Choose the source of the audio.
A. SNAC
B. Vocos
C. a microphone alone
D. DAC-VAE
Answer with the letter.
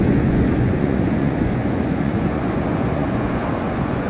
B